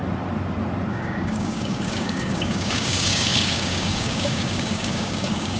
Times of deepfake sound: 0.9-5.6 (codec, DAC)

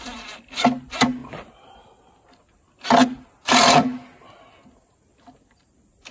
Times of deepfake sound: none

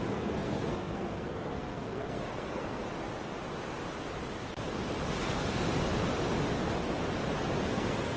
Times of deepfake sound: 0.0-2.8 (codec, SNAC); 7.7-8.2

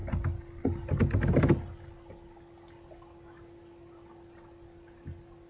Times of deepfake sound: none

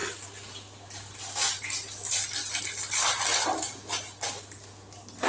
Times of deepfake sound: none

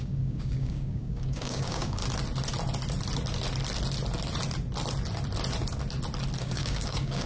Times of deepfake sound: 0.0-2.0 (codec, DAC); 6.4-7.3